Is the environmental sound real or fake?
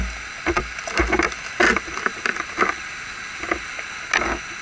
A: real